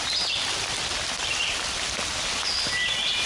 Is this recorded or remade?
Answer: recorded